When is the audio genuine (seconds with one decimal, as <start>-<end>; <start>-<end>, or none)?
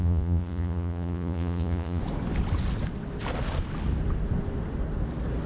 2.0-5.5